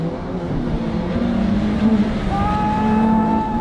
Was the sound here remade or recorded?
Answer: remade